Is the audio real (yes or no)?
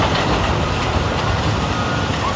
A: yes